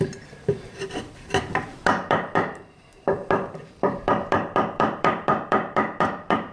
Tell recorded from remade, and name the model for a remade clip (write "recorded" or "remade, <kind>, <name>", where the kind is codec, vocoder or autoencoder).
remade, vocoder, BigVGAN v2